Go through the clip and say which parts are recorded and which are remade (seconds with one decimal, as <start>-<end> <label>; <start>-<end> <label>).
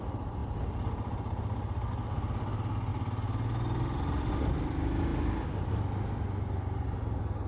0.0-7.5 recorded